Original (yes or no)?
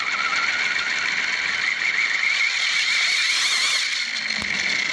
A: yes